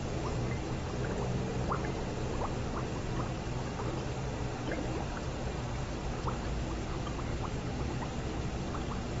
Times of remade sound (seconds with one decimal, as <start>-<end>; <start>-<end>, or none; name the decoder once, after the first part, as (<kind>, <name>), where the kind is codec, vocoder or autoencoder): 7.3-8.1 (vocoder, BigVGAN v2)